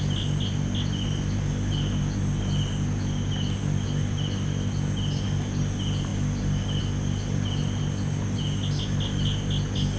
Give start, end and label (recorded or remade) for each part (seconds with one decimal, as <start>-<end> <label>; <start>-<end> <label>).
0.0-10.0 recorded

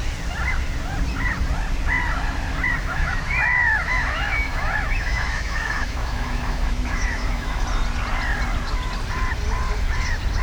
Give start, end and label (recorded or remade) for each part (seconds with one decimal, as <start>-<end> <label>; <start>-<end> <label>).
0.0-2.8 recorded; 2.8-7.6 remade; 7.6-10.4 recorded

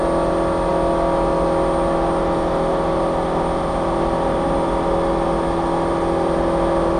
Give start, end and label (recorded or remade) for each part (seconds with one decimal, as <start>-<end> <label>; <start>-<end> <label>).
0.0-7.0 recorded